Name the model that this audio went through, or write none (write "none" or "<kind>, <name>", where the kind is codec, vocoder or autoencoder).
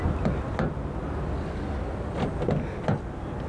none